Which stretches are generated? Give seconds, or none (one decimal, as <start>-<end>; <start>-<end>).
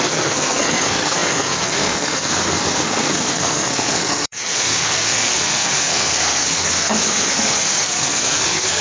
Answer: 0.0-8.8